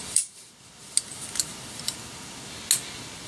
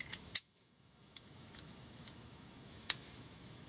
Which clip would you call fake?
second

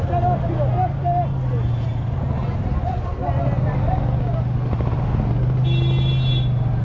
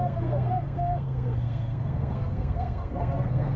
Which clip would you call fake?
second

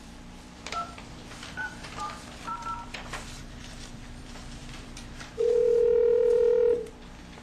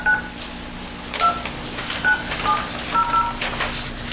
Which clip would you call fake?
first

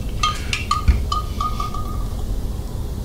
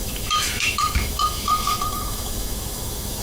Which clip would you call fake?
second